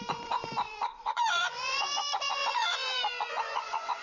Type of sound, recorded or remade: remade